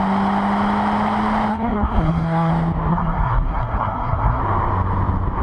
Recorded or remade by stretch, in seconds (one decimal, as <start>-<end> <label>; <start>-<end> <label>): 0.0-1.5 recorded; 1.5-2.5 remade; 2.5-2.9 recorded; 2.9-4.4 remade; 4.4-5.4 recorded